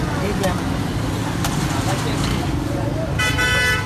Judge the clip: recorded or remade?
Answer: recorded